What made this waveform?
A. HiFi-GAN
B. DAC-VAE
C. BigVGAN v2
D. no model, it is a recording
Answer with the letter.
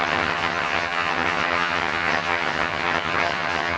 A